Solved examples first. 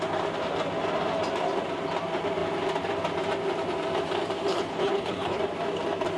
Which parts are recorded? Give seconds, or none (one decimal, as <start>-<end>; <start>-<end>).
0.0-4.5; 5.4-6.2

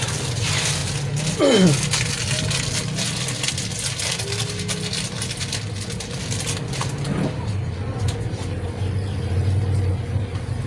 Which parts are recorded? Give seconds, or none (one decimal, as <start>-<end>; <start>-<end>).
0.0-10.7

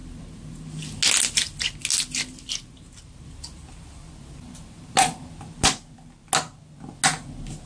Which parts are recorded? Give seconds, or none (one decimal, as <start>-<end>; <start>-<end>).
0.0-7.7

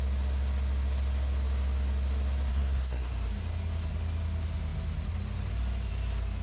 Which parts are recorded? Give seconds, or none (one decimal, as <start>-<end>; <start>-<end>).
0.0-2.5; 3.1-6.4

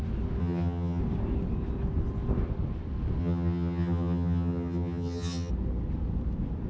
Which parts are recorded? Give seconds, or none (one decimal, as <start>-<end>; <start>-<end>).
0.0-0.4; 1.0-3.2; 5.5-6.7

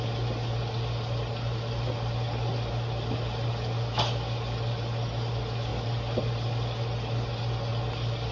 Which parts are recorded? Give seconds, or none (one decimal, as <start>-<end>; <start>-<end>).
0.0-8.3